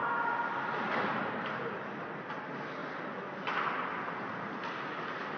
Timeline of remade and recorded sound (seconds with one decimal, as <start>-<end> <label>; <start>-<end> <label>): 0.0-5.4 recorded